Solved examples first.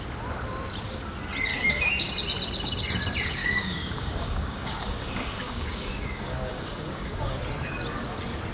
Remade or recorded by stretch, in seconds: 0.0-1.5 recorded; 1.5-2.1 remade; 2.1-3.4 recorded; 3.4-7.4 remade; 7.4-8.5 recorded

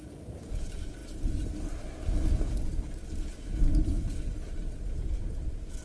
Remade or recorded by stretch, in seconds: 0.0-5.8 recorded

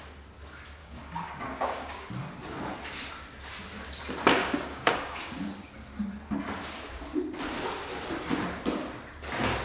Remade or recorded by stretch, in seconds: 0.0-0.8 recorded; 0.8-2.1 remade; 2.1-4.4 recorded; 4.4-5.3 remade; 5.3-9.6 recorded

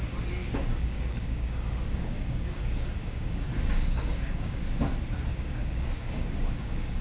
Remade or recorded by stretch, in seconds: 0.0-0.4 recorded; 0.4-4.6 remade; 4.6-5.3 recorded; 5.3-7.0 remade

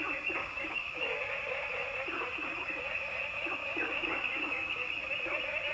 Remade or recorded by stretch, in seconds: 0.0-0.4 recorded; 0.4-1.3 remade; 1.3-3.6 recorded; 3.6-4.9 remade; 4.9-5.7 recorded

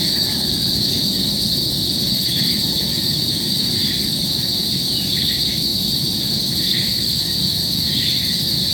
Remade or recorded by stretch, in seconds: 0.0-8.7 remade